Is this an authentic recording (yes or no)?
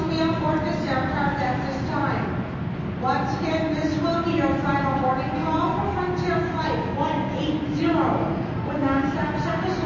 yes